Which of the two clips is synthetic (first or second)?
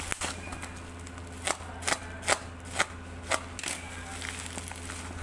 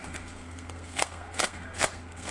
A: second